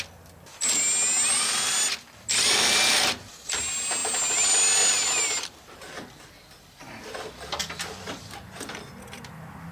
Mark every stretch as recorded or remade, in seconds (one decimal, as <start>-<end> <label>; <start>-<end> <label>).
0.0-9.7 recorded